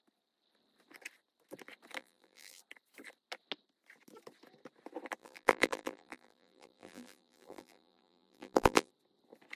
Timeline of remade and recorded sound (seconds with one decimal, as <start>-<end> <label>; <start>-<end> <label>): 0.0-2.0 recorded; 2.0-2.6 remade; 2.6-5.2 recorded; 5.2-8.9 remade; 8.9-9.6 recorded